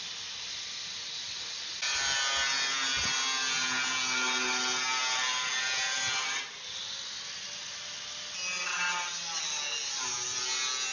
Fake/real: real